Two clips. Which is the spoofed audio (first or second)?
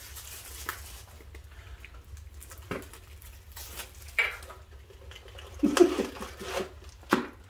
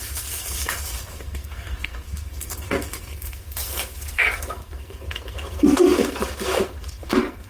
second